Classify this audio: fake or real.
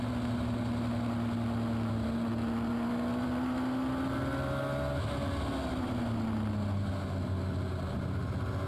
real